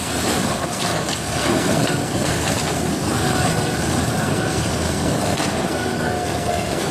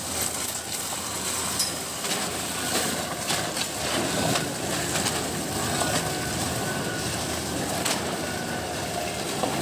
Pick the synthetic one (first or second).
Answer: first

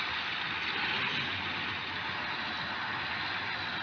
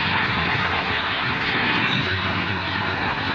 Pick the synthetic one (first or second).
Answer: second